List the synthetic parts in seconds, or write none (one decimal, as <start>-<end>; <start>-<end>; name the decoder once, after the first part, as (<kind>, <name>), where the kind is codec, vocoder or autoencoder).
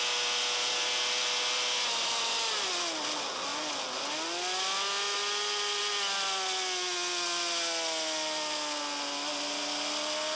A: none